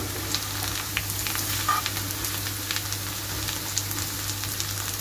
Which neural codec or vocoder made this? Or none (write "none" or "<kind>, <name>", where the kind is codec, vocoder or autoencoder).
none